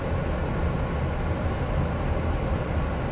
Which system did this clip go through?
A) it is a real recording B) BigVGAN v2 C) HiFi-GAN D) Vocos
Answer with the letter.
A